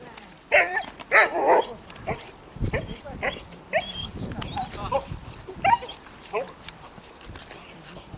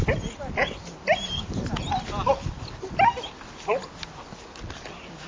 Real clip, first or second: second